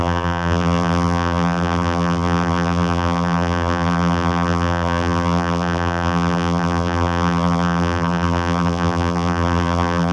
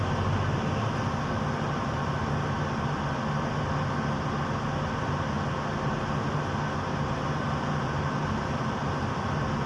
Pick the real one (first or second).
second